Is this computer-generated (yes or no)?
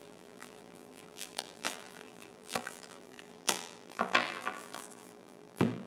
yes